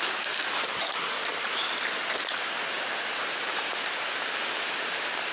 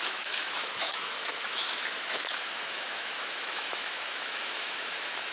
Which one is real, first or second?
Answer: first